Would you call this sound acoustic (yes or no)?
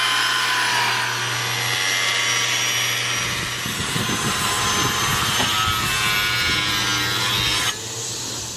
yes